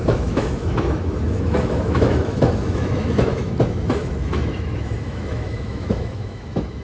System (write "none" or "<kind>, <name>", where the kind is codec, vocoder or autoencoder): autoencoder, DAC-VAE